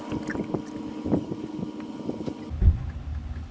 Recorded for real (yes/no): yes